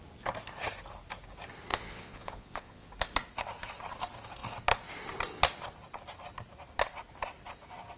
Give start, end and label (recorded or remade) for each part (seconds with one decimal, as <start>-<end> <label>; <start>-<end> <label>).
0.0-1.7 recorded; 1.7-2.9 remade; 2.9-8.0 recorded